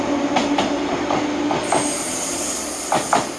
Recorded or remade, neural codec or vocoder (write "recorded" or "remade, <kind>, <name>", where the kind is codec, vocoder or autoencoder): recorded